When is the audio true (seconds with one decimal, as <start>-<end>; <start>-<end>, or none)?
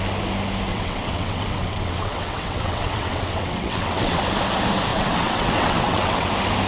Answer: 0.0-0.7; 4.2-4.9; 6.3-6.7